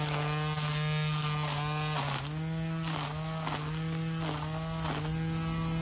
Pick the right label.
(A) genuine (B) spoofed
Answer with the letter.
A